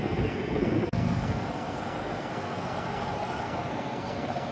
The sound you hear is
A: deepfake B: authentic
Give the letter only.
A